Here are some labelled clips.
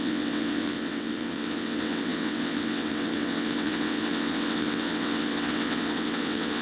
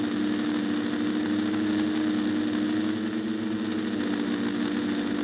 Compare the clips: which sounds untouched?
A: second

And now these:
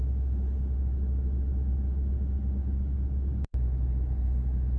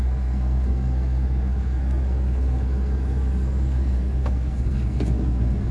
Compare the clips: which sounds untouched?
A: first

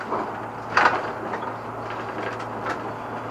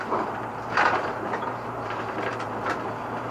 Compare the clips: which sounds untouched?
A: first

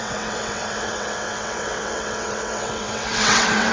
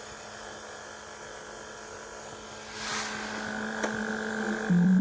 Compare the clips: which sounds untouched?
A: second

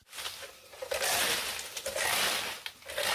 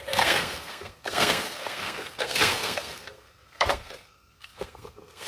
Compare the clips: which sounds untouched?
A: first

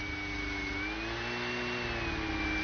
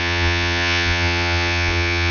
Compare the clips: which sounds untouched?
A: first